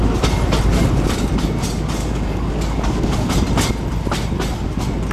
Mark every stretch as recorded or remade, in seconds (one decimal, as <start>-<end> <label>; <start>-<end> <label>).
0.0-2.0 recorded; 2.0-3.3 remade; 3.3-5.1 recorded